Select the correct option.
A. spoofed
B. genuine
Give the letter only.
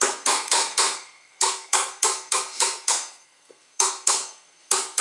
A